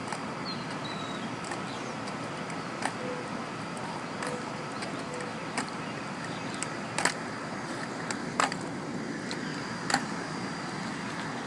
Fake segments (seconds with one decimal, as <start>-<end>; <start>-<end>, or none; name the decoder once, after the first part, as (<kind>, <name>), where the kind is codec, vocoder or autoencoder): none